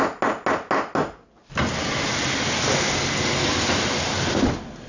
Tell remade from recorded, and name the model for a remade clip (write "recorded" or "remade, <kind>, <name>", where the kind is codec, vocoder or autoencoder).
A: recorded